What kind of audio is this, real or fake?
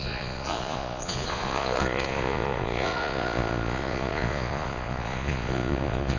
fake